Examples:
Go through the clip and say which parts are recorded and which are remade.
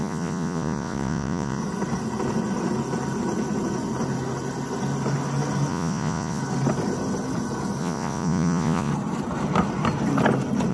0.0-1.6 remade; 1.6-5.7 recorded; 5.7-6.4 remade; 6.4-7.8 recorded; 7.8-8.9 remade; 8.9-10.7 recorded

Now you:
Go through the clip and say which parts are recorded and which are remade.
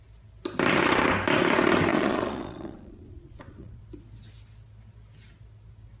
0.0-1.9 recorded; 1.9-3.8 remade; 3.8-6.0 recorded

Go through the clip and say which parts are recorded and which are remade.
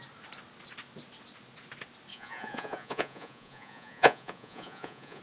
0.0-2.1 recorded; 2.1-5.2 remade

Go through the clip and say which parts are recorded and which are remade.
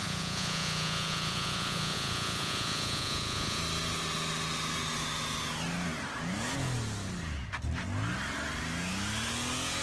0.0-3.6 remade; 3.6-9.8 recorded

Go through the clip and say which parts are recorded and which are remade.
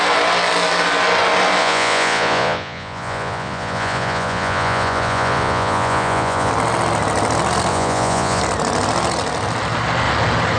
0.0-1.6 recorded; 1.6-6.5 remade; 6.5-7.7 recorded; 7.7-8.4 remade; 8.4-10.6 recorded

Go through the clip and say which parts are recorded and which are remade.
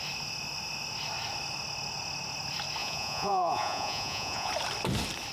0.0-2.8 recorded; 2.8-4.5 remade; 4.5-5.3 recorded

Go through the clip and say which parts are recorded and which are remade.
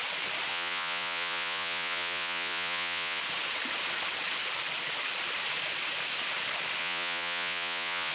0.0-0.5 recorded; 0.5-3.2 remade; 3.2-6.8 recorded; 6.8-8.1 remade